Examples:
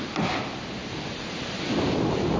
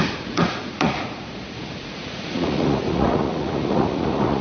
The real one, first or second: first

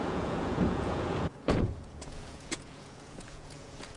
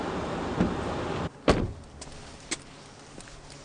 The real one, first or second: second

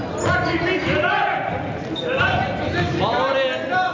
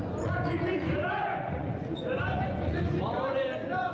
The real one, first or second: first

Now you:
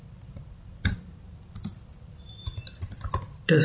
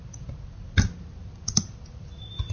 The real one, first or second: second